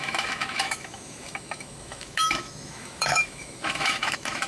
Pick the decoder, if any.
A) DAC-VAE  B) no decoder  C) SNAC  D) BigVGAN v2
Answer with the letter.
A